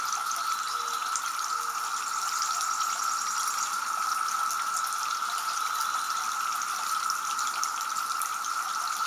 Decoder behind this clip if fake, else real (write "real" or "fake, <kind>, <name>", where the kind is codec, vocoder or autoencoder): real